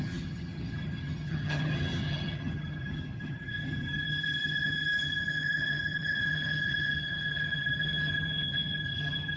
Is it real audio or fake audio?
fake